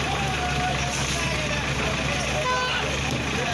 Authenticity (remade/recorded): recorded